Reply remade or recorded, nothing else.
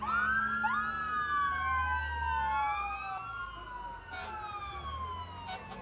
recorded